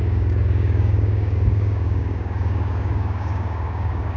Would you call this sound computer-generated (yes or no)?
yes